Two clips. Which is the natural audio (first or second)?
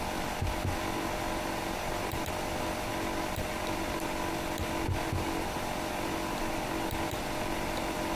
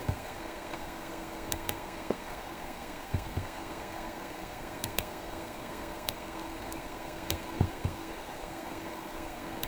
first